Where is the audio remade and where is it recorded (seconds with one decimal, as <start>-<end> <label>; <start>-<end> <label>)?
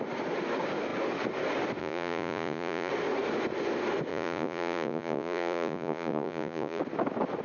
0.0-1.8 recorded; 1.8-2.9 remade; 2.9-4.1 recorded; 4.1-6.8 remade; 6.8-7.4 recorded